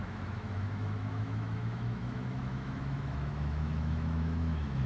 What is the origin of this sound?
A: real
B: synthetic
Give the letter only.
B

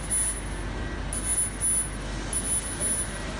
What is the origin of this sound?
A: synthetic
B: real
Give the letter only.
B